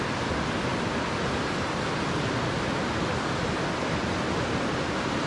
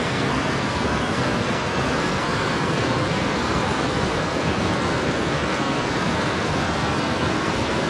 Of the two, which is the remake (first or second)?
second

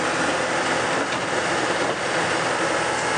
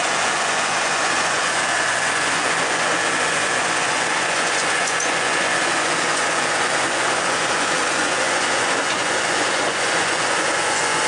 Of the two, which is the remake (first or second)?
second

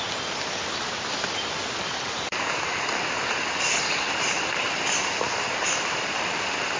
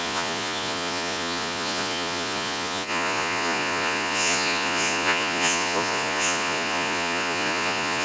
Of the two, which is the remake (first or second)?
second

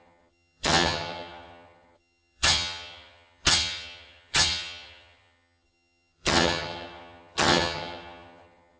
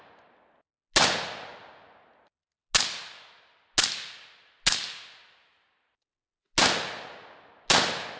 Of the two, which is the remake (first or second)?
first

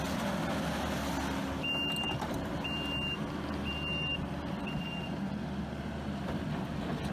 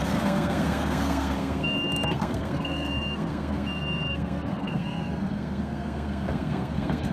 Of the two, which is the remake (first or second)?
second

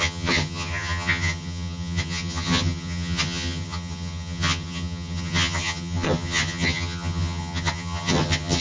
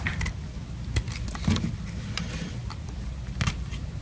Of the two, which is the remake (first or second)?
first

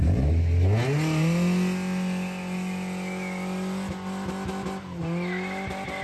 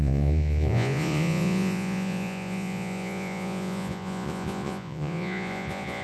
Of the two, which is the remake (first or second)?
second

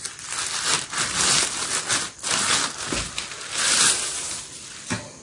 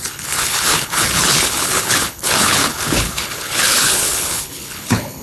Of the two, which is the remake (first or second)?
second